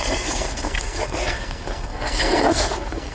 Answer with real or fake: fake